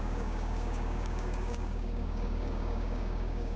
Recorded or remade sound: remade